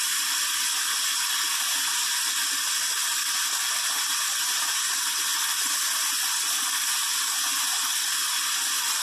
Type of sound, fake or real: real